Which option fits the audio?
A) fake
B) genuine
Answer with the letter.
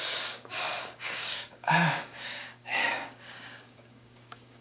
A